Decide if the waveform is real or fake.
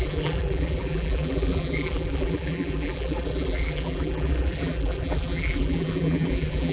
fake